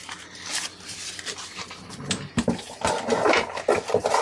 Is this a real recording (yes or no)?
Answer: yes